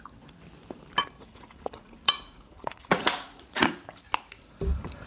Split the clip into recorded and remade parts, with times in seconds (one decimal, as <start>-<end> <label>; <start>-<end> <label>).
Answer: 0.0-1.0 recorded; 1.0-3.7 remade; 3.7-5.1 recorded